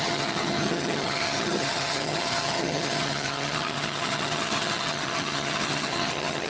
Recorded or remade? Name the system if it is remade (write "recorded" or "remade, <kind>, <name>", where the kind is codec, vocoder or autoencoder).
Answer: remade, vocoder, HiFi-GAN